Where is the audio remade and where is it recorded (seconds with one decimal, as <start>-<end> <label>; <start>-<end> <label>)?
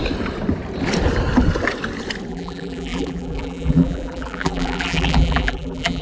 0.0-2.3 recorded; 2.3-6.0 remade